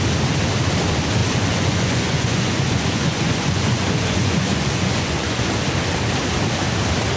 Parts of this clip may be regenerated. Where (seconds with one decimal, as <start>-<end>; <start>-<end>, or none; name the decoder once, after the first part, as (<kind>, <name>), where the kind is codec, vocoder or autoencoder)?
1.2-5.5 (vocoder, Vocos)